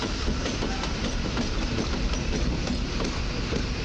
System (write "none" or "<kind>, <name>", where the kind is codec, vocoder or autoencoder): none